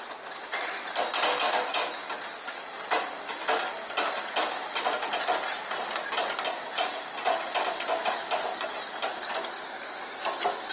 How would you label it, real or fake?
real